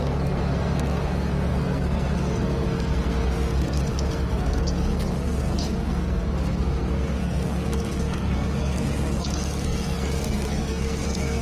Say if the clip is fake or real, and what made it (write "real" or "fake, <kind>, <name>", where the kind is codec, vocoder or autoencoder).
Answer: fake, codec, SNAC